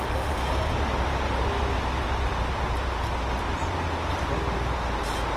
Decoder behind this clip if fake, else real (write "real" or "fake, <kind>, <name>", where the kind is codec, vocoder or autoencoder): real